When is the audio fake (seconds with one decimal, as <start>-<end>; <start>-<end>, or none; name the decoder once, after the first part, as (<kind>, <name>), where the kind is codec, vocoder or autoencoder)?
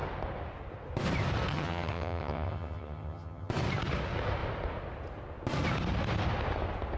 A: 1.5-3.5 (vocoder, HiFi-GAN)